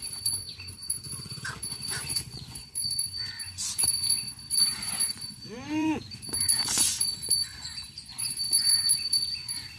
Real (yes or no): no